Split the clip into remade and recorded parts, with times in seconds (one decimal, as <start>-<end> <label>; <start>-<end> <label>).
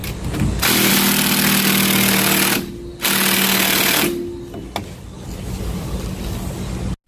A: 0.0-0.9 remade; 0.9-7.1 recorded